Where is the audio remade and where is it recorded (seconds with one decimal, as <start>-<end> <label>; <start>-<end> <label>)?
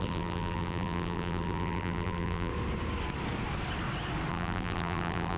0.0-2.5 remade; 2.5-4.3 recorded; 4.3-5.4 remade